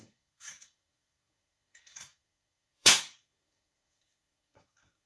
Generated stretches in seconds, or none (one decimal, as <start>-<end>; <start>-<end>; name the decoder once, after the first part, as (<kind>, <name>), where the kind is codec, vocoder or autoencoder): 0.0-5.1 (codec, SNAC)